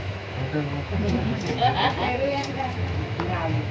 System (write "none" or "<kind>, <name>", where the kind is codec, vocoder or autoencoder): autoencoder, DAC-VAE